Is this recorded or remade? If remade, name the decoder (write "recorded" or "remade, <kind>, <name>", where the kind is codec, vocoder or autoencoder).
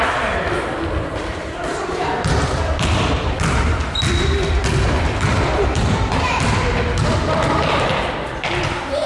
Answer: remade, vocoder, BigVGAN v2